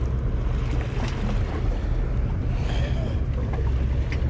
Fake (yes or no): no